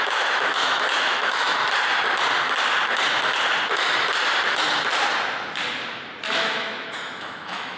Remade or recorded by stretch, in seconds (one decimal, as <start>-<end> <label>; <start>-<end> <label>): 0.0-1.6 remade; 1.6-6.3 recorded; 6.3-7.8 remade